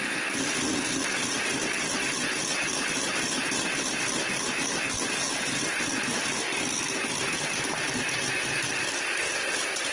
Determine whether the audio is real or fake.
real